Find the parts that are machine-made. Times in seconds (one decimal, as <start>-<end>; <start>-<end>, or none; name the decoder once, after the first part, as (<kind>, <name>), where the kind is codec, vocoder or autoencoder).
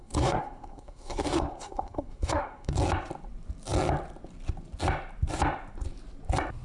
0.0-2.7 (codec, SNAC)